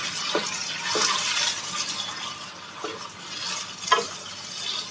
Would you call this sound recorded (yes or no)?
yes